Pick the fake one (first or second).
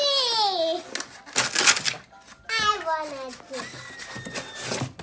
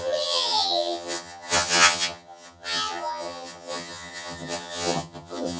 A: second